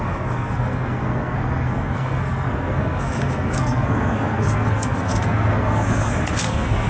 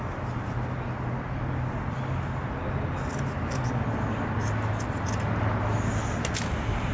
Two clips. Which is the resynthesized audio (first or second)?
first